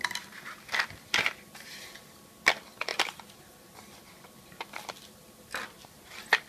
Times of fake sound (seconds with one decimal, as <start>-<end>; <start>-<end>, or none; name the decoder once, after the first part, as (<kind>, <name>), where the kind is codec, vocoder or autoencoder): none